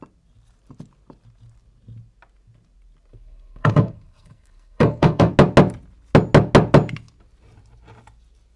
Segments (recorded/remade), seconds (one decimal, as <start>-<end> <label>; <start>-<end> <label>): 0.0-3.1 recorded; 3.1-5.3 remade; 5.3-8.6 recorded